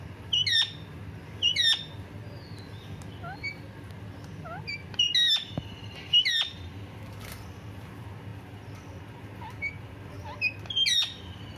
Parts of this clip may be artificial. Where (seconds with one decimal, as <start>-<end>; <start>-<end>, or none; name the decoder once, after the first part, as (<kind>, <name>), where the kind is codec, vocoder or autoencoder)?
none